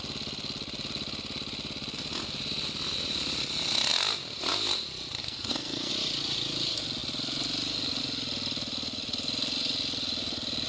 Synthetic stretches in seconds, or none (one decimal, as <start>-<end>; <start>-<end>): 5.2-5.9